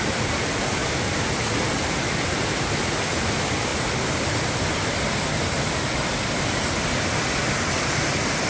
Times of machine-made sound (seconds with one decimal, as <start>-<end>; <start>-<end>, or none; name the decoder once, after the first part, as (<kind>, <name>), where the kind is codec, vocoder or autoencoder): none